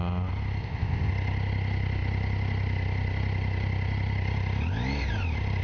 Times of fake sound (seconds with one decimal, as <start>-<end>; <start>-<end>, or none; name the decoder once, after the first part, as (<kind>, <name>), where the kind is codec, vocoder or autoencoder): 0.6-1.1 (codec, ZipCodec)

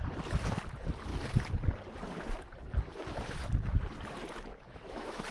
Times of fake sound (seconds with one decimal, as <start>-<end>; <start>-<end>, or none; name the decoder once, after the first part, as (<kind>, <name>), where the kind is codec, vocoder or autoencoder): 4.5-5.3 (autoencoder, DAC-VAE)